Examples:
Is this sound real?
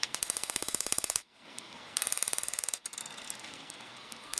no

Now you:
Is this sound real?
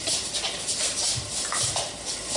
yes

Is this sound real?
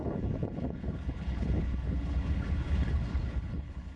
no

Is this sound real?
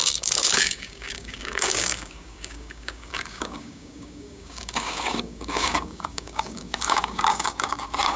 no